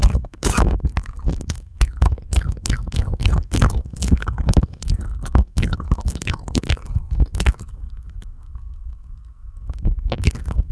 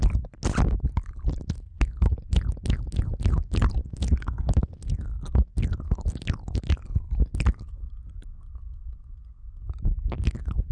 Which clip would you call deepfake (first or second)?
first